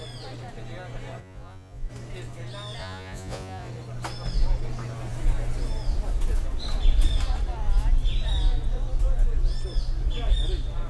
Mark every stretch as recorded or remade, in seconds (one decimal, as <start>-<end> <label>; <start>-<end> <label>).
0.0-1.2 recorded; 1.2-1.9 remade; 1.9-2.8 recorded; 2.8-3.7 remade; 3.7-10.9 recorded